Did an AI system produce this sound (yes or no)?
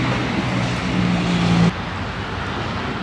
no